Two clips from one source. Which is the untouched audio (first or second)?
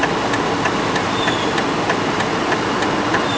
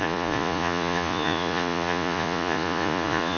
first